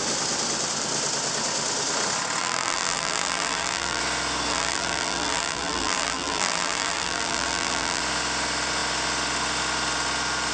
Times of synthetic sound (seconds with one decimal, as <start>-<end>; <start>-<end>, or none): 2.4-4.0; 4.5-8.0